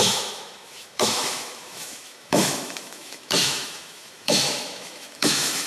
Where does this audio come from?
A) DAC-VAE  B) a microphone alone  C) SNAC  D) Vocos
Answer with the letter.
A